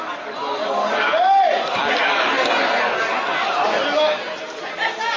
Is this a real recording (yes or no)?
yes